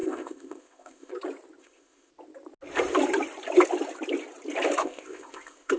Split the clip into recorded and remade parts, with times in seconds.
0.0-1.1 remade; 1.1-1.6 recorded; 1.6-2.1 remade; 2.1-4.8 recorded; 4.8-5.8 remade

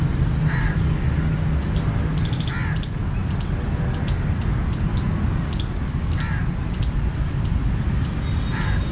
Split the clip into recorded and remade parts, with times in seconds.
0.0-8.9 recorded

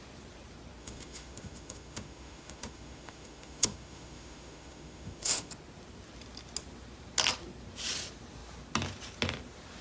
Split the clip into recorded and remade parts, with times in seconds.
0.0-0.8 recorded; 0.8-5.5 remade; 5.5-9.8 recorded

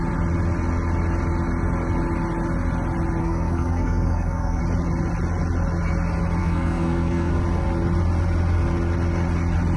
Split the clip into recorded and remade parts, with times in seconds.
0.0-3.2 recorded; 3.2-4.6 remade; 4.6-6.4 recorded; 6.4-7.3 remade; 7.3-9.8 recorded

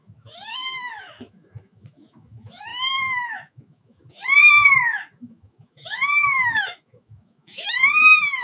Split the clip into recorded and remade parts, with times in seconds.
0.0-8.4 remade